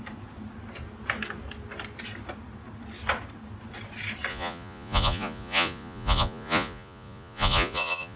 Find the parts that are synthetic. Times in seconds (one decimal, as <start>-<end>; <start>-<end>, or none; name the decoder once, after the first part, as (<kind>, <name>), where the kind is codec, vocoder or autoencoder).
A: 4.3-8.2 (vocoder, Vocos)